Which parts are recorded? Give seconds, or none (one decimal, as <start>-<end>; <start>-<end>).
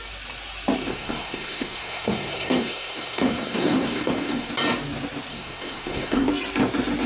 0.0-0.9; 4.5-5.3; 6.3-7.1